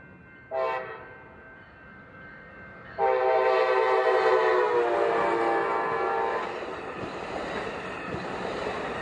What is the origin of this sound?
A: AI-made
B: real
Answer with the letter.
B